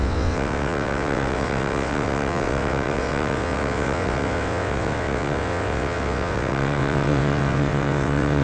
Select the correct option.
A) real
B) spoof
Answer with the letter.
B